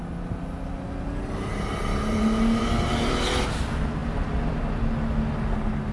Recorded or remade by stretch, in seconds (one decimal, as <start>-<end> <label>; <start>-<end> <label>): 0.0-2.1 recorded; 2.1-3.2 remade; 3.2-5.9 recorded